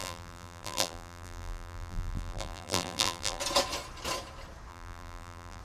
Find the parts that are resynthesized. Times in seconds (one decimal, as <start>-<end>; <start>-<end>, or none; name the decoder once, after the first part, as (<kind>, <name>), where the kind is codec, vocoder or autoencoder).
0.0-3.4 (vocoder, BigVGAN v2); 4.7-5.6